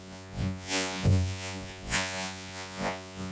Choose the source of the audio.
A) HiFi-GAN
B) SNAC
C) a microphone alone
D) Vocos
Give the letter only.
D